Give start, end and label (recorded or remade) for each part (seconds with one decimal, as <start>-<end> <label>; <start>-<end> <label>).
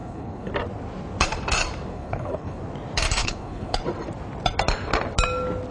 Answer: 0.0-0.5 remade; 0.5-1.9 recorded; 1.9-2.6 remade; 2.6-3.2 recorded; 3.2-3.8 remade; 3.8-5.7 recorded